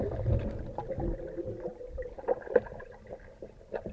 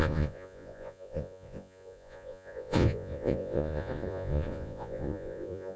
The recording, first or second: first